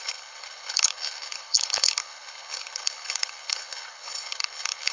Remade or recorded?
remade